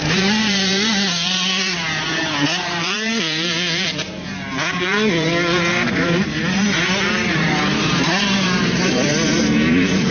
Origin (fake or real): fake